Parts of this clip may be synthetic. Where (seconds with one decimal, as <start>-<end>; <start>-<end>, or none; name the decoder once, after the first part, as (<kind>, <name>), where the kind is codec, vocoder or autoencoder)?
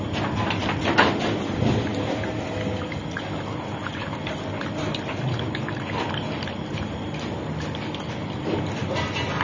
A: none